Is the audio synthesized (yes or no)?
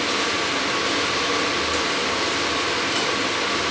no